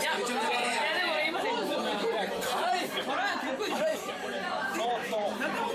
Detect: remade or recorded remade